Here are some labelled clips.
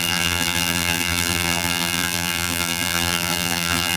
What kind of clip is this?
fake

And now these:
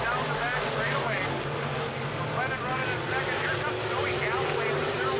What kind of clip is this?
real